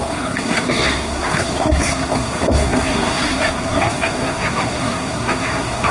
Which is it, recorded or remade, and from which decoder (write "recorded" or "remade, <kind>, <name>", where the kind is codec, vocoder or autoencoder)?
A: remade, codec, SNAC